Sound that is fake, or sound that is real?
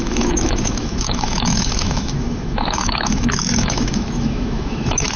fake